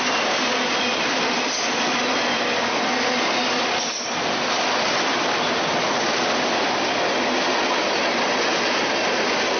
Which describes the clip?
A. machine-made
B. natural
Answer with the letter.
B